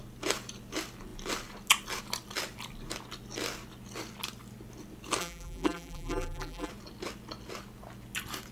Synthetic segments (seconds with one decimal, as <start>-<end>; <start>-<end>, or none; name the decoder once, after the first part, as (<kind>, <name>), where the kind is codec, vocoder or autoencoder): 5.2-6.7 (vocoder, BigVGAN v2)